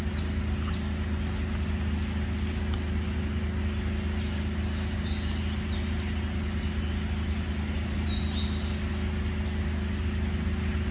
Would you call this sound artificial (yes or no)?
no